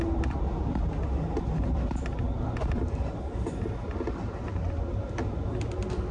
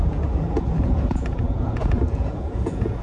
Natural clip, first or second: first